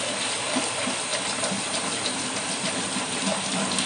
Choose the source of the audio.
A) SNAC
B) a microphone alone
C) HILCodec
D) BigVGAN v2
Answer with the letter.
B